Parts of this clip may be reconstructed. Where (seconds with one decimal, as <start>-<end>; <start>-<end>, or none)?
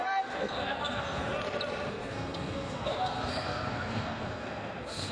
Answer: 0.0-1.2; 1.9-5.1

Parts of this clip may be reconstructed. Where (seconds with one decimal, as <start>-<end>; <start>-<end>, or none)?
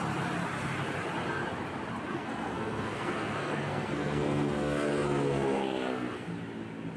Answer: 2.1-6.3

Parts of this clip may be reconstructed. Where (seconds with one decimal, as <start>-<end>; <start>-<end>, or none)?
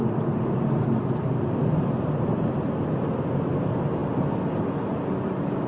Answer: none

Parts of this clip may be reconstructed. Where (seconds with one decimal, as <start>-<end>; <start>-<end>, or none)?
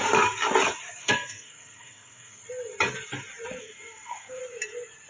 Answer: 1.0-2.4; 3.6-4.4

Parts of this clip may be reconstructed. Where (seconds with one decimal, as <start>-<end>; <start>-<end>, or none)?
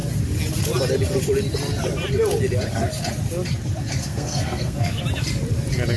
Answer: 4.0-5.0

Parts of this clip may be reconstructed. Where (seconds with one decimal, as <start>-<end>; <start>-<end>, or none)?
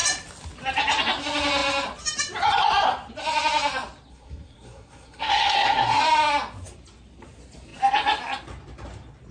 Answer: 4.1-6.0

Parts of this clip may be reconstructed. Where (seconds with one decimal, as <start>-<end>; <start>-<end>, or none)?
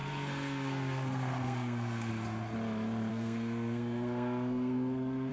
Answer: 0.0-2.1; 3.1-5.3